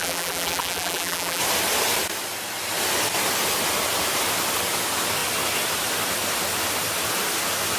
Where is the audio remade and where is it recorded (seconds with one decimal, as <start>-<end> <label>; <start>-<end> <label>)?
0.0-1.4 remade; 1.4-7.8 recorded